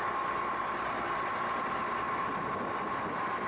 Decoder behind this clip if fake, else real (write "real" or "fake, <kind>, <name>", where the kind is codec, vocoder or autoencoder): real